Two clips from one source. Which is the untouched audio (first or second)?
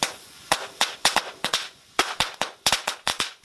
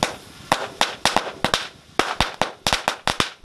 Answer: second